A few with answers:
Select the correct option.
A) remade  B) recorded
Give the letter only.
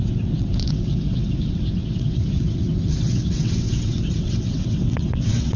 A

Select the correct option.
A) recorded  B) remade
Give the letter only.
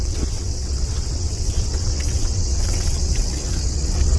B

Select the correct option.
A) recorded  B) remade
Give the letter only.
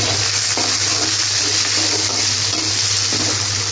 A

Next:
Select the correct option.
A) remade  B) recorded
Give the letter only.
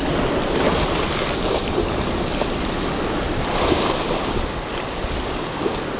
B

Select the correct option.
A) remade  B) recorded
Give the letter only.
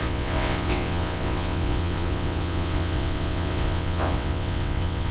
A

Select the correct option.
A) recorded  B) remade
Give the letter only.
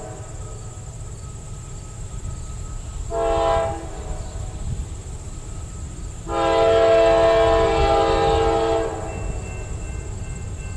A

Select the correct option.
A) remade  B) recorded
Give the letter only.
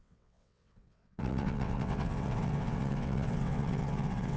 A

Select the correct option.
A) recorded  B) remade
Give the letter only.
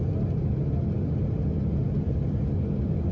A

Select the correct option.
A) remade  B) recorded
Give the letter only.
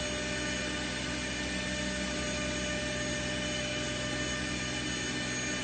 B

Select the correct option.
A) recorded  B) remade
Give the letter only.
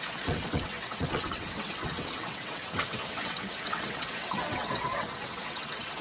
B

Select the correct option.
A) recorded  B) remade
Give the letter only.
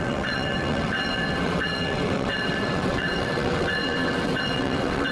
B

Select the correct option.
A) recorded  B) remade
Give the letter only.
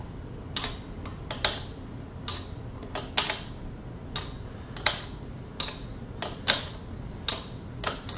A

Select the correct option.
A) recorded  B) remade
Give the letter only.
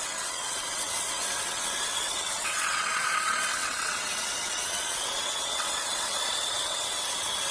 B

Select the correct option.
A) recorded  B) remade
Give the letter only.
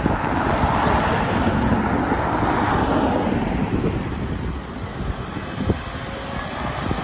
A